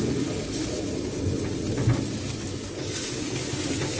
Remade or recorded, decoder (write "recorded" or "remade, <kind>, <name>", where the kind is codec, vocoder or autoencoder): recorded